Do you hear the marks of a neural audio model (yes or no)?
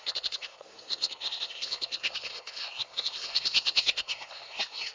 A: yes